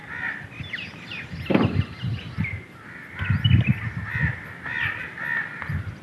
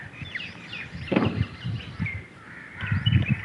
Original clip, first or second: first